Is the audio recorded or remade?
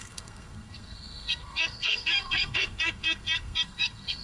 remade